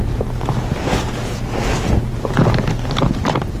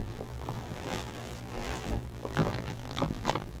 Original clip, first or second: first